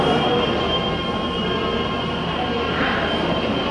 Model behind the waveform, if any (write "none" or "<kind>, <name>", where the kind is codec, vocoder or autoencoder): none